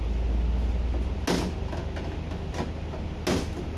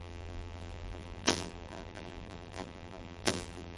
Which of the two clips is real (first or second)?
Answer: first